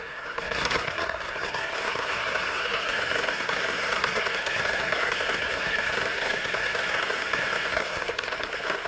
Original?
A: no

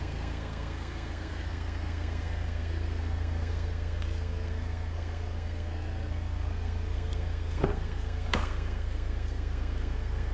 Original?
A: no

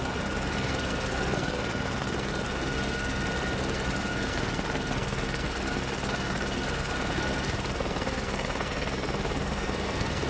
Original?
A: no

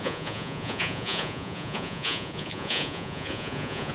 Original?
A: no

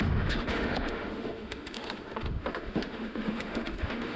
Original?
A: no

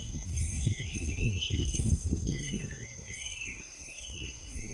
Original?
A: no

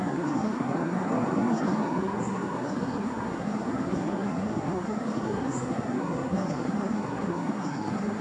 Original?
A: no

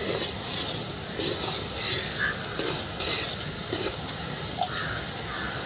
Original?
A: yes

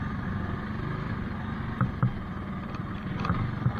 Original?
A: yes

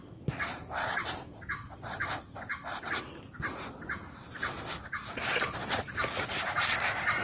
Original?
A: yes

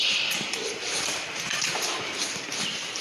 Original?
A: no